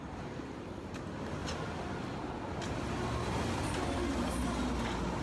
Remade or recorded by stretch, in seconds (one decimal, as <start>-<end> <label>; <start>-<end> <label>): 0.0-5.2 recorded